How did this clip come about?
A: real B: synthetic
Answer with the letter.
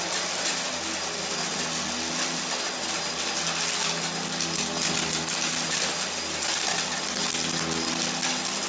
A